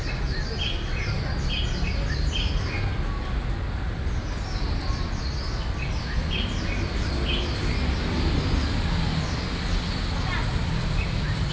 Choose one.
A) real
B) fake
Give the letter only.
A